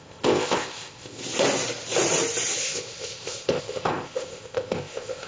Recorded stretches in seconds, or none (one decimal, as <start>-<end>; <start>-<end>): 1.2-2.6